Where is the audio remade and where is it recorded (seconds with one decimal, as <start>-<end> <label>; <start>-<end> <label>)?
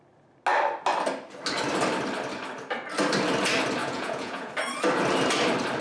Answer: 0.0-3.8 recorded; 3.8-4.5 remade; 4.5-5.8 recorded